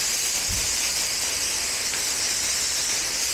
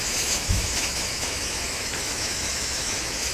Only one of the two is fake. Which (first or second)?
second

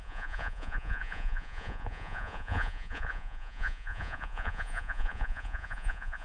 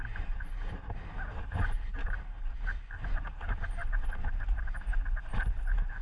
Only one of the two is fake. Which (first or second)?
first